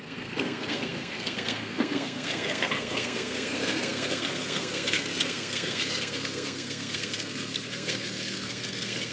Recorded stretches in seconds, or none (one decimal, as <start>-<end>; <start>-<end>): none